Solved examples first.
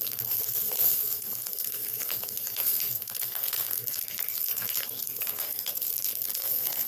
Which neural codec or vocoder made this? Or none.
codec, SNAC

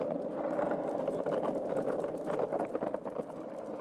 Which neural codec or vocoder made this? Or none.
none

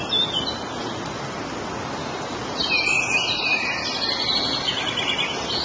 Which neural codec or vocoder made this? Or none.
none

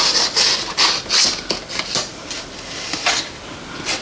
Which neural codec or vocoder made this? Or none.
none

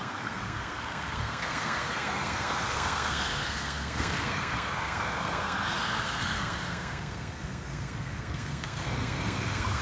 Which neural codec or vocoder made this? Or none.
codec, SNAC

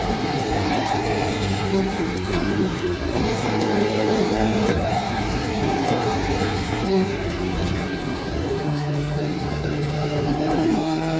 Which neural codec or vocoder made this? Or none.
codec, SNAC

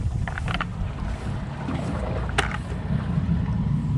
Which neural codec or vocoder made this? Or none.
none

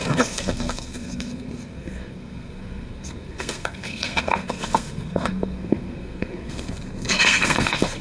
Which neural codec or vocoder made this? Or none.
codec, SNAC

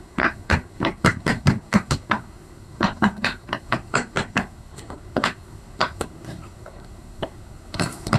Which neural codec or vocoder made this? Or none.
codec, SNAC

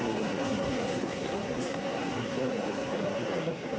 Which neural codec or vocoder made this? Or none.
codec, SNAC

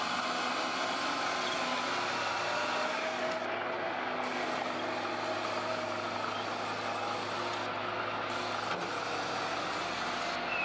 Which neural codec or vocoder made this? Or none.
none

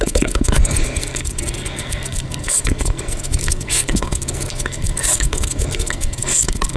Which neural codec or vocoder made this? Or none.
codec, SNAC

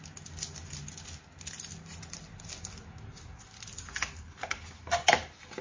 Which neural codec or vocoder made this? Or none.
none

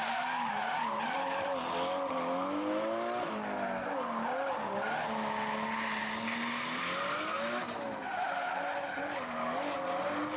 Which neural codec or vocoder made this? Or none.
none